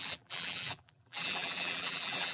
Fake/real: fake